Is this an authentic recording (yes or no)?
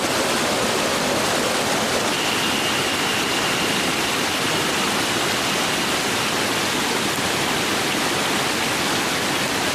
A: yes